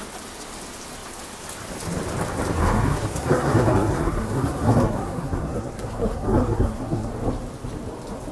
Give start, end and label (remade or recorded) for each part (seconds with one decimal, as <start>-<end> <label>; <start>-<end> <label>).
0.0-2.6 recorded; 2.6-7.1 remade; 7.1-8.3 recorded